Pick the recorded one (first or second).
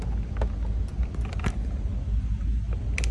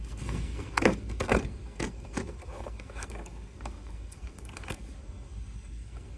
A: first